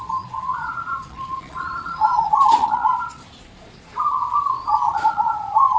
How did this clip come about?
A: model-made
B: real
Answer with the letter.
A